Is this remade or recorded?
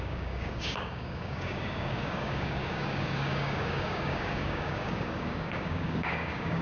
remade